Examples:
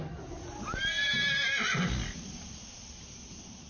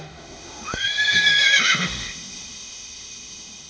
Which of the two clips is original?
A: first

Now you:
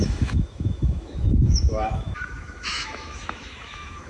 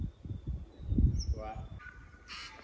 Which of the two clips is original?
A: second